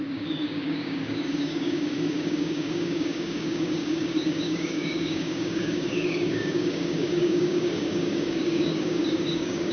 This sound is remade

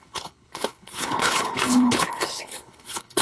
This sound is remade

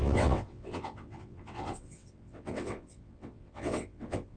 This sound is remade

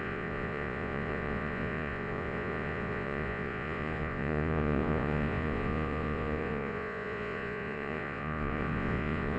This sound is remade